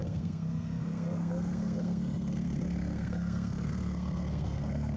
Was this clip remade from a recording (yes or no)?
yes